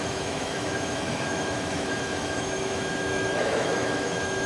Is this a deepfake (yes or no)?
yes